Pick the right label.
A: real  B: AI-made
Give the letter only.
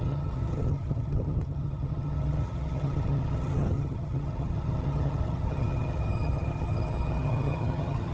B